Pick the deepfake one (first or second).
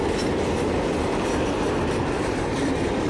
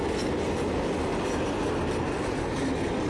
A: first